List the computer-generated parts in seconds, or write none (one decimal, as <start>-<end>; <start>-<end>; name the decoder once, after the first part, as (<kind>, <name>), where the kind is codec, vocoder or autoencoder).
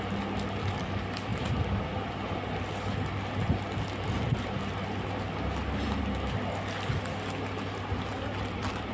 none